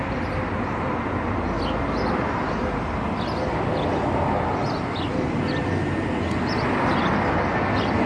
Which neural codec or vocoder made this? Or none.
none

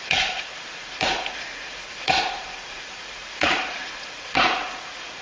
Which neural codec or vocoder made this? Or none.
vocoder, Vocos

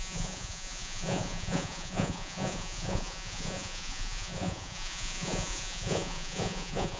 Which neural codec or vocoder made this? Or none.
vocoder, Vocos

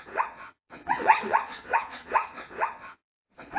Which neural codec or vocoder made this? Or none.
vocoder, Vocos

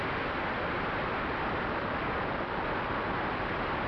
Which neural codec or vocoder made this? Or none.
none